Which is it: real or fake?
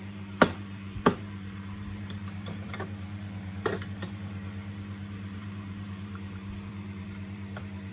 fake